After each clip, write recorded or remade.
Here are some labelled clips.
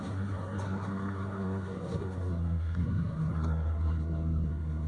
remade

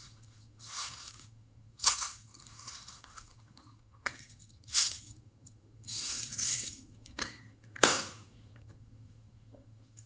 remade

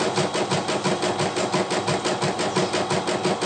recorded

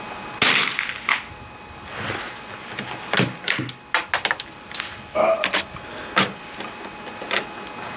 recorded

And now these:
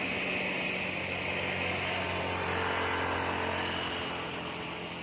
recorded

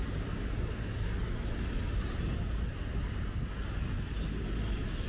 recorded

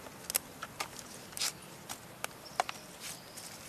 recorded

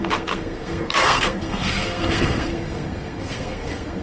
remade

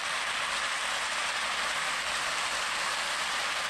recorded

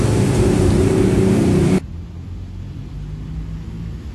recorded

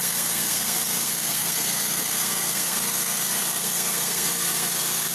remade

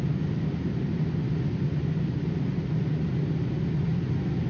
recorded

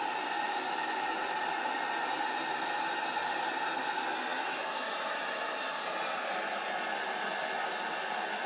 recorded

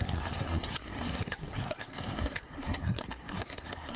remade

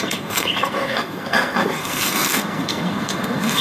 remade